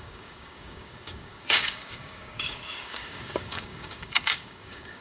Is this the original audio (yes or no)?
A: no